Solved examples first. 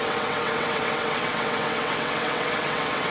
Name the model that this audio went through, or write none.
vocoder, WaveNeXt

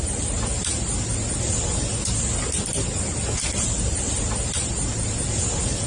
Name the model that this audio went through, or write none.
none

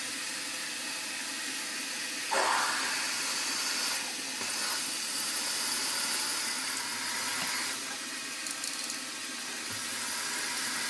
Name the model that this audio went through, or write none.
none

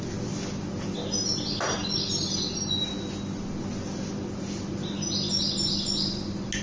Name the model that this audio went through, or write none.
none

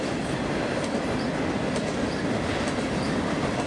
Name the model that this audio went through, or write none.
none